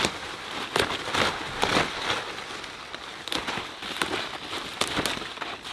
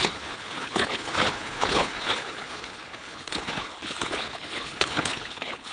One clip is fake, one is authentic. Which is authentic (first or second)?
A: first